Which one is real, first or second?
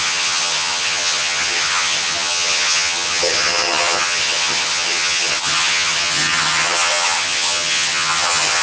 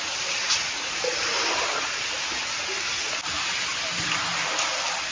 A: second